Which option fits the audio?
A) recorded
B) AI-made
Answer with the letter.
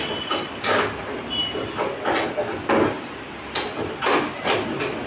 A